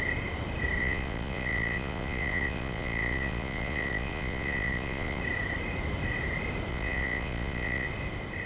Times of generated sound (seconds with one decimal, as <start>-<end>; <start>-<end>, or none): 0.8-5.2; 6.7-7.9